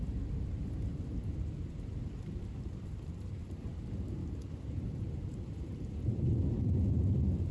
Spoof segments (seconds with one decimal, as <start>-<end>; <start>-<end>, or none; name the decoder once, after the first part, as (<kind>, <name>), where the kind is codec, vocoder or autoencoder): 0.0-6.3 (vocoder, BigVGAN v2)